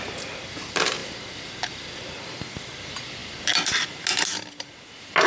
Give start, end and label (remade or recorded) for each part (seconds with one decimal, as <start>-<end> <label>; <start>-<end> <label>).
0.0-5.3 recorded